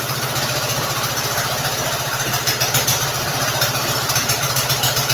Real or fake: fake